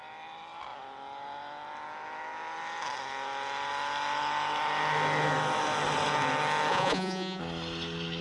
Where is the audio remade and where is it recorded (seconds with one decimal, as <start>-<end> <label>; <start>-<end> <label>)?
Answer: 0.0-6.7 recorded; 6.7-7.4 remade; 7.4-8.2 recorded